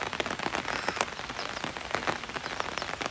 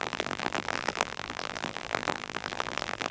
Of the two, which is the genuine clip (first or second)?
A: first